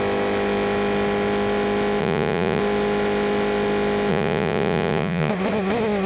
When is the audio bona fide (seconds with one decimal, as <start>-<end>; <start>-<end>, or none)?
0.0-2.0; 2.6-4.1; 5.3-6.1